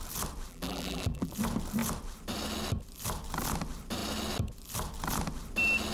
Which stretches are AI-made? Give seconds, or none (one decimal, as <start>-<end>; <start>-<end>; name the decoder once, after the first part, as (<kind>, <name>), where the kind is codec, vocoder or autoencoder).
0.5-1.3 (vocoder, BigVGAN v2)